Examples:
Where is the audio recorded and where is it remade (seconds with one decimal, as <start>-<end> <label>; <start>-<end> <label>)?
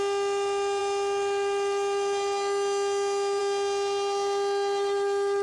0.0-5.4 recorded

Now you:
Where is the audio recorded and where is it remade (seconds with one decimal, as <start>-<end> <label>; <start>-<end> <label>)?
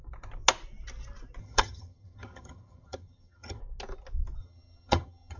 0.0-1.4 recorded; 1.4-3.6 remade; 3.6-4.4 recorded; 4.4-5.4 remade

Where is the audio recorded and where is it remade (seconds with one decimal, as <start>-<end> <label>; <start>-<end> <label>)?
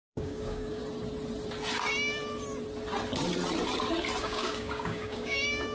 0.0-0.8 remade; 0.8-4.2 recorded; 4.2-5.7 remade